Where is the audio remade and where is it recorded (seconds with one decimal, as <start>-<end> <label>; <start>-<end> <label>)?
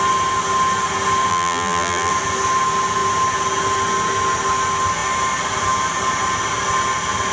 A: 0.0-1.3 recorded; 1.3-2.1 remade; 2.1-7.3 recorded